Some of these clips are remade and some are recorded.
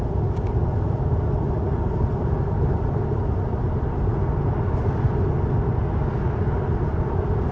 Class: recorded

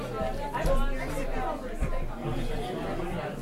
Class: recorded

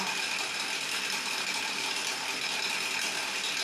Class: recorded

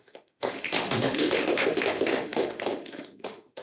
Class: remade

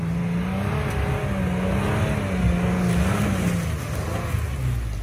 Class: recorded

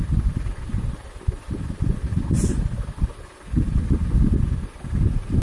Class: recorded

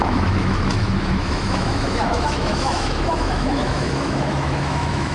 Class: remade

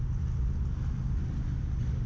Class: recorded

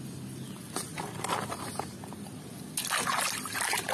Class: recorded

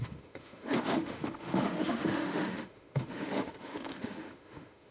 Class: remade